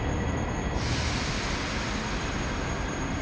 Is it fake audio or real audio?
real